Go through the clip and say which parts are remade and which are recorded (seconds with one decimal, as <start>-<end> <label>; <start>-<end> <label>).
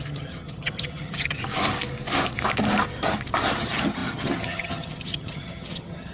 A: 0.0-1.4 remade; 1.4-3.6 recorded; 3.6-6.1 remade